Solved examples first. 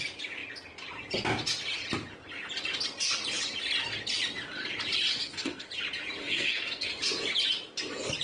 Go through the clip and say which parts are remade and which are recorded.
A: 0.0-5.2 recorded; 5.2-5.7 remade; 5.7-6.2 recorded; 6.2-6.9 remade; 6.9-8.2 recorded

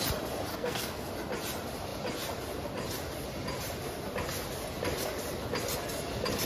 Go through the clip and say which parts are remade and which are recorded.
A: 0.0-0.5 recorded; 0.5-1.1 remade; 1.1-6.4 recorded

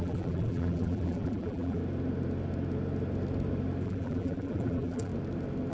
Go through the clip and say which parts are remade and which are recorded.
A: 0.0-1.8 remade; 1.8-3.8 recorded; 3.8-5.1 remade; 5.1-5.7 recorded

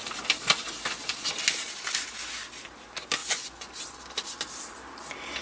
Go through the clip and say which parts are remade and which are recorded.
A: 0.0-3.2 recorded; 3.2-3.8 remade; 3.8-5.4 recorded

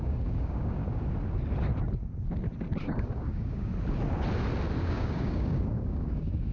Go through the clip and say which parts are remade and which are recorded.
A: 0.0-0.8 remade; 0.8-2.8 recorded; 2.8-3.7 remade; 3.7-4.8 recorded; 4.8-6.5 remade